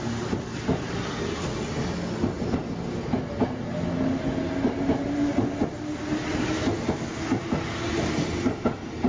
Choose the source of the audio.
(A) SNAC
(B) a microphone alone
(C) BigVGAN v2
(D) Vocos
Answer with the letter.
B